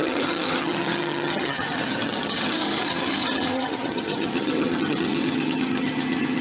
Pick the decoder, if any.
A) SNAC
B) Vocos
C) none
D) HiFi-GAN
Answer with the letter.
D